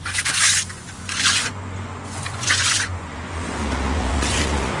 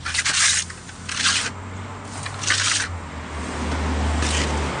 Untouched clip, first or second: second